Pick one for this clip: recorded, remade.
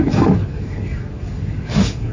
remade